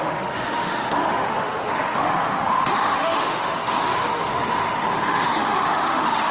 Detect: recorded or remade remade